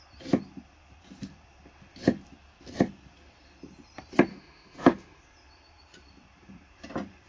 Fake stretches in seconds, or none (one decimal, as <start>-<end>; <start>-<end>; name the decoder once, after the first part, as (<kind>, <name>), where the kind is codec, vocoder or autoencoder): 4.3-5.2 (autoencoder, DAC-VAE)